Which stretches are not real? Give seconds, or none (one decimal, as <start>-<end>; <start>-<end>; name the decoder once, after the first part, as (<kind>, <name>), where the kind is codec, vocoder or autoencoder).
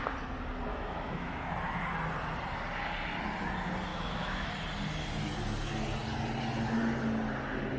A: 0.7-1.5 (autoencoder, DAC-VAE); 3.9-4.5